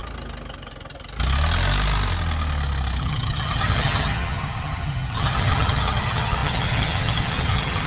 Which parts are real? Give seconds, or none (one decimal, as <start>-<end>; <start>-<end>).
0.0-3.0